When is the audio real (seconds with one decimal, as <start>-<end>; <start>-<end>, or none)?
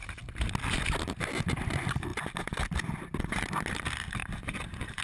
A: 0.0-4.2